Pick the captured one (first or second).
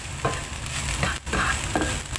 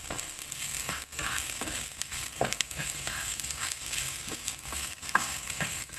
first